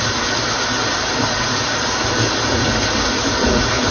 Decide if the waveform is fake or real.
real